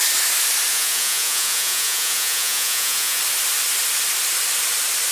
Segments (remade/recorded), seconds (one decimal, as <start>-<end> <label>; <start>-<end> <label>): 0.0-0.7 recorded; 0.7-3.2 remade; 3.2-5.1 recorded